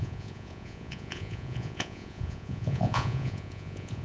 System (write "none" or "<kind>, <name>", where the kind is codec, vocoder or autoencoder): vocoder, Vocos